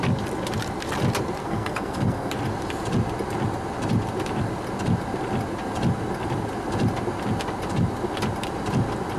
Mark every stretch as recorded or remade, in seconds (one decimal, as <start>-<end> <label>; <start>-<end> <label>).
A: 0.0-1.4 recorded; 1.4-2.3 remade; 2.3-9.2 recorded